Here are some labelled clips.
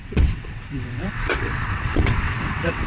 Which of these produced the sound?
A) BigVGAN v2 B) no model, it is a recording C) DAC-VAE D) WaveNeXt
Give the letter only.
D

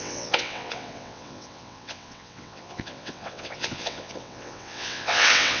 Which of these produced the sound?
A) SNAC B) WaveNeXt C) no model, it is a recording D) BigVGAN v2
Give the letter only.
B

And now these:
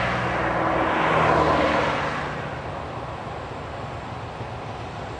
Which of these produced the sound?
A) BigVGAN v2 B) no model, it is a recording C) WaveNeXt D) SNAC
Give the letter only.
B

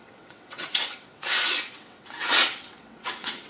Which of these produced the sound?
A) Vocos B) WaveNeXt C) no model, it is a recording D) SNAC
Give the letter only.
B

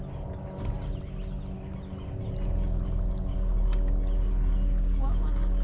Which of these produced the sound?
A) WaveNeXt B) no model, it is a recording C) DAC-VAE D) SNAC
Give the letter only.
B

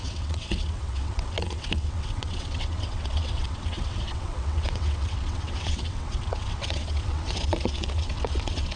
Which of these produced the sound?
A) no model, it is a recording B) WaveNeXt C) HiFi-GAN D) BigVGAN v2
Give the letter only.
B